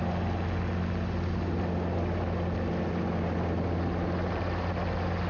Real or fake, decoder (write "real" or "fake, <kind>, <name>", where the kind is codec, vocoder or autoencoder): real